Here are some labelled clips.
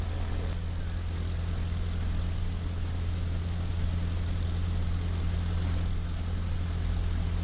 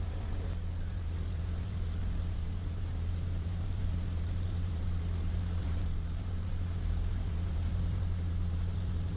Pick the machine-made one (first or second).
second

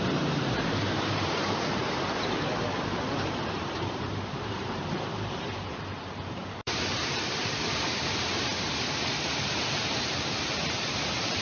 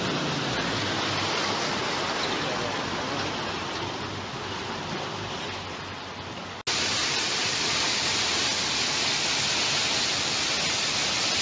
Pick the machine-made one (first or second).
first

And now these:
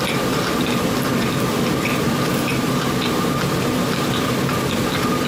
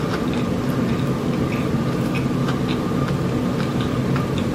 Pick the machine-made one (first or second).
first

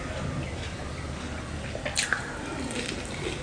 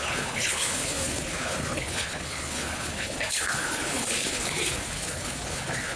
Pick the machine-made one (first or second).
second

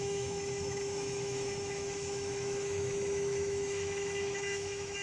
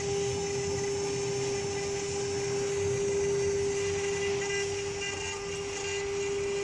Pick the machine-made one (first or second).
first